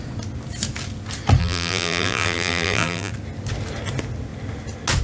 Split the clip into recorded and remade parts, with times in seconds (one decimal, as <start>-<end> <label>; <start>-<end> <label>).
0.0-1.4 recorded; 1.4-3.1 remade; 3.1-5.0 recorded